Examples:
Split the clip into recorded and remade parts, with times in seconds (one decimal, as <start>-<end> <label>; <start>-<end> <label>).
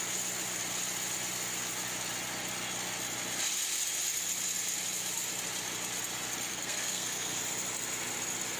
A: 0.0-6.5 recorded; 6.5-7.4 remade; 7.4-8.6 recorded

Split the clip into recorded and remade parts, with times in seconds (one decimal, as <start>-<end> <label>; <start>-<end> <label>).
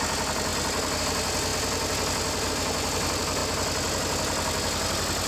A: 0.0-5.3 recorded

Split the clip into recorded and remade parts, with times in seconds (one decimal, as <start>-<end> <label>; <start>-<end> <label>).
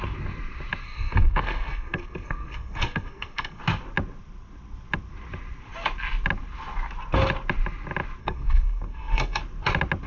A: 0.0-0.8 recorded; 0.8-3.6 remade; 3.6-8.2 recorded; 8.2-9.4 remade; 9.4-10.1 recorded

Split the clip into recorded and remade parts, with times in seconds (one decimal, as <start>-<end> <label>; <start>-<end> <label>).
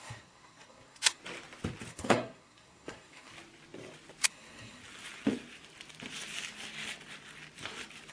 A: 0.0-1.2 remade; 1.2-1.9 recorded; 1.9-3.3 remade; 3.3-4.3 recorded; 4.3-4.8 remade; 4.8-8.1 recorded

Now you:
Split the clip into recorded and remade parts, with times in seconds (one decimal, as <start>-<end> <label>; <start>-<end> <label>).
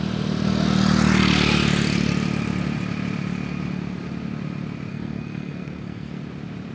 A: 0.0-4.9 recorded; 4.9-6.2 remade; 6.2-6.7 recorded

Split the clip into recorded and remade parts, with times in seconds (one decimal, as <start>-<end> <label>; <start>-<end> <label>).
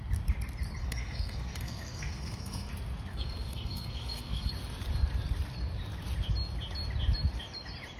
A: 0.0-0.8 recorded; 0.8-2.7 remade; 2.7-3.1 recorded; 3.1-4.5 remade; 4.5-8.0 recorded